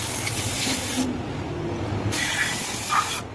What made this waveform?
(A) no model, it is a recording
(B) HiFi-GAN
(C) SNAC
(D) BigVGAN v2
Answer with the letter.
A